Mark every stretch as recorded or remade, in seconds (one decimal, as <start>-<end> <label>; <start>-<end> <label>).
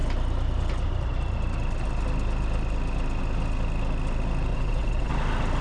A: 0.0-4.5 recorded; 4.5-5.1 remade; 5.1-5.6 recorded